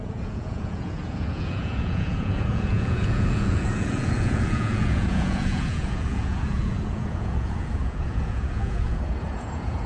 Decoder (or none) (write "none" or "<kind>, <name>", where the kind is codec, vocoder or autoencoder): vocoder, Vocos